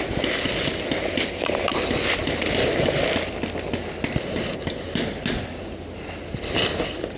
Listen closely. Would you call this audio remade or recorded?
recorded